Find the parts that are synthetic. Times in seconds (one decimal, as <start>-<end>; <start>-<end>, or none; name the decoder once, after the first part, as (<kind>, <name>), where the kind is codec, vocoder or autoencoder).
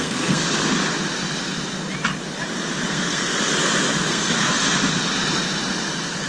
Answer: 0.0-0.4 (codec, SNAC); 2.9-3.5; 4.1-4.6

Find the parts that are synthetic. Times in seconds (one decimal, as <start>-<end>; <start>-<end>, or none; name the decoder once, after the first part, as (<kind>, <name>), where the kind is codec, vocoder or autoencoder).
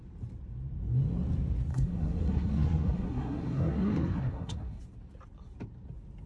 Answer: 1.7-4.8 (codec, SNAC)